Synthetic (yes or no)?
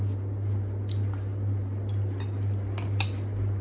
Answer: no